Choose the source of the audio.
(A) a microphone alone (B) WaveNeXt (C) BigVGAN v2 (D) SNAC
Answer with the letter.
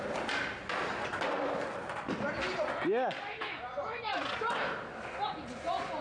A